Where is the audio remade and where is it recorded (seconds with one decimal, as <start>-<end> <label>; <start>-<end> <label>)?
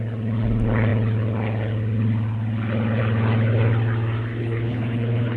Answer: 0.0-4.4 recorded; 4.4-5.4 remade